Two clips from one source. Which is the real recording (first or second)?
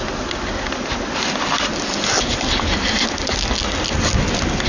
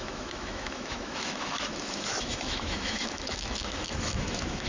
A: first